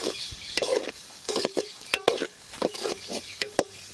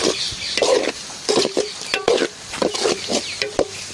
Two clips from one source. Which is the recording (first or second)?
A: second